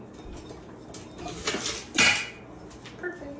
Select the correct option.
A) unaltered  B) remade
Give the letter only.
A